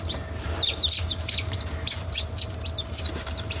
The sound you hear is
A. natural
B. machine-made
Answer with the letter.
B